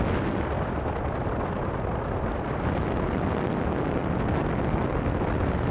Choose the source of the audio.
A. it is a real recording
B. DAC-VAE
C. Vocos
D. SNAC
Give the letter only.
A